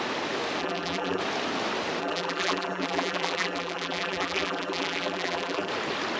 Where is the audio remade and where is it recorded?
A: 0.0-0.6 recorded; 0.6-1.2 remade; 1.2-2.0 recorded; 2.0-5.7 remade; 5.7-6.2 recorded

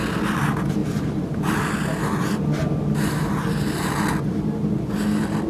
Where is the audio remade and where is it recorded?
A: 0.0-0.8 recorded; 0.8-1.5 remade; 1.5-5.5 recorded

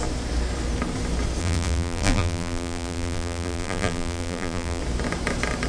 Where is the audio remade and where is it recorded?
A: 0.0-1.4 recorded; 1.4-4.8 remade; 4.8-5.7 recorded

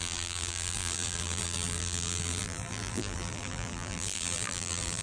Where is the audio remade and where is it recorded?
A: 0.0-5.0 remade